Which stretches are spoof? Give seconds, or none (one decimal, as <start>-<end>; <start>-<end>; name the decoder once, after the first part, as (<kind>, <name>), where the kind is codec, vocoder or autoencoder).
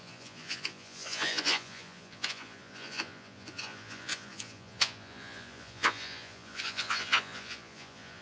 0.0-8.2 (vocoder, Vocos)